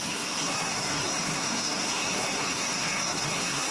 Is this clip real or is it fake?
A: fake